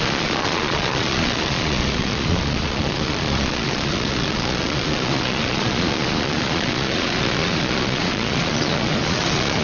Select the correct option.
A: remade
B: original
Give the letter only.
A